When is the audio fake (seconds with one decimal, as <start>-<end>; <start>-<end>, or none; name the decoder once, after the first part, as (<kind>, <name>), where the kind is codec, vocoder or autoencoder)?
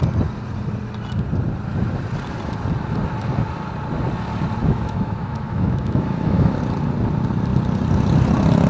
4.6-6.6 (autoencoder, DAC-VAE)